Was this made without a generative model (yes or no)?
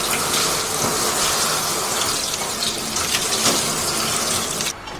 yes